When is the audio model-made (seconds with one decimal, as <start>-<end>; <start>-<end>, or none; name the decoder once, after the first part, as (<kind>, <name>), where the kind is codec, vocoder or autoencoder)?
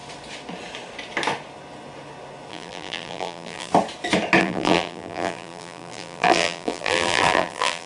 2.5-3.7 (vocoder, BigVGAN v2); 4.4-7.9